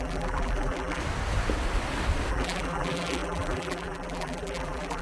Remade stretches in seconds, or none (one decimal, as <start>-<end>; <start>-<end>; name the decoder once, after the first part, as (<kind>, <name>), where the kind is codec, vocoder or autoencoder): 0.0-1.0 (vocoder, BigVGAN v2); 2.3-5.0